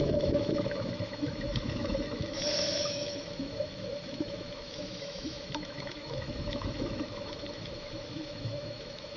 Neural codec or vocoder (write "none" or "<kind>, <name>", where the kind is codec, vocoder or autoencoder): autoencoder, DAC-VAE